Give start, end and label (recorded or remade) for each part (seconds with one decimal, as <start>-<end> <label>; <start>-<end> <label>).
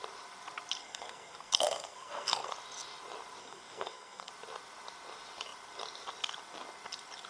0.0-0.8 recorded; 0.8-2.5 remade; 2.5-3.4 recorded; 3.4-4.3 remade; 4.3-7.3 recorded